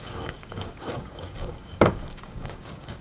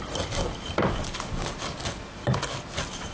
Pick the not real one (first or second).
first